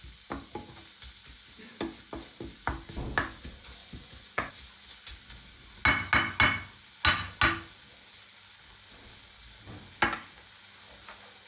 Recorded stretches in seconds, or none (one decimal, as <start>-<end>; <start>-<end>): 0.0-3.8; 4.5-11.5